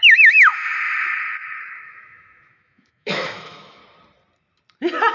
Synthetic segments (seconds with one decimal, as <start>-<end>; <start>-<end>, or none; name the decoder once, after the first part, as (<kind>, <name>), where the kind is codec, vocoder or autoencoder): 0.0-0.5 (autoencoder, DAC-VAE); 1.6-3.8